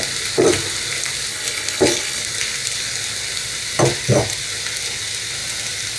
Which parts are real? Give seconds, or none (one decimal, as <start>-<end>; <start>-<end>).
0.0-1.3; 2.2-6.0